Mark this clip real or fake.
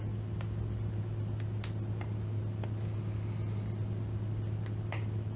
fake